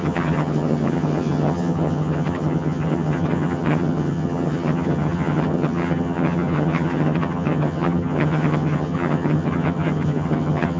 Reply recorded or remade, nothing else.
remade